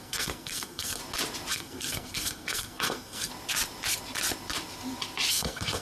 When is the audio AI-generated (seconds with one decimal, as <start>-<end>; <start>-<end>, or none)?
0.0-1.0; 1.5-3.3; 5.3-5.8